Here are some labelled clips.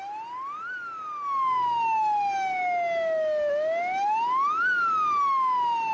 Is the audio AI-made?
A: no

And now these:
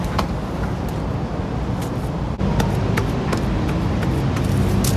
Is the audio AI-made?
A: no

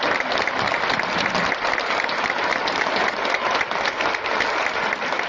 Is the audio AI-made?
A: no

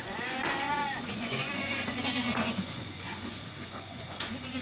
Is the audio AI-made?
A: yes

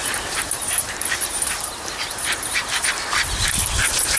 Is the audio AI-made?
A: yes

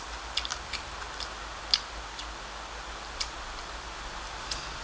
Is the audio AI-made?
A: no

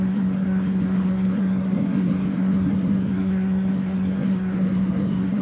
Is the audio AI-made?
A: yes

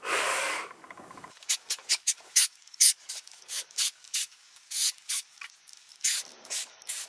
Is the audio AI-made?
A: yes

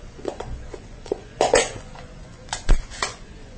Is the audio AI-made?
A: yes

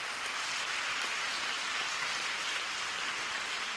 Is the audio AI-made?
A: no